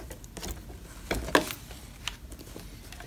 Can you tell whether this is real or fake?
real